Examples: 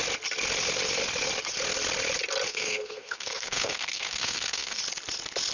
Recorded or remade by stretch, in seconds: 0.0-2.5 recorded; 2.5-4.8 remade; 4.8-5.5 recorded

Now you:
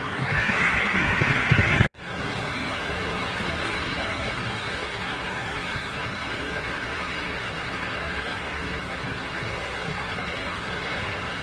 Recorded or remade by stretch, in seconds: 0.0-11.4 remade

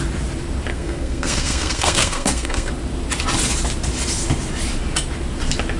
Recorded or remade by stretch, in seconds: 0.0-0.7 recorded; 0.7-2.7 remade; 2.7-5.8 recorded

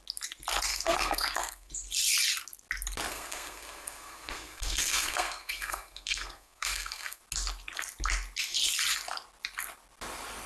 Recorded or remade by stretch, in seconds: 0.0-0.7 recorded; 0.7-1.7 remade; 1.7-3.1 recorded; 3.1-7.2 remade; 7.2-10.5 recorded